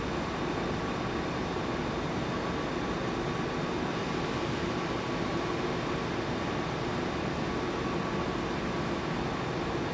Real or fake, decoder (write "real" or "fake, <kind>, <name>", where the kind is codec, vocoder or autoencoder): real